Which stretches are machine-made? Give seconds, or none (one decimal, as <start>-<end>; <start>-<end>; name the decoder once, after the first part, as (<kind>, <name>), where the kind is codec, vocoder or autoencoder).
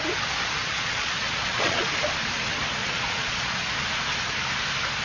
0.6-1.9 (vocoder, Vocos); 2.8-3.6